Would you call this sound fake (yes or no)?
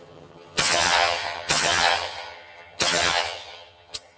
yes